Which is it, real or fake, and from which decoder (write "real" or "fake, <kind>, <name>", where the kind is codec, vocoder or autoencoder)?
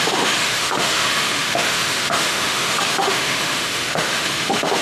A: fake, autoencoder, DAC-VAE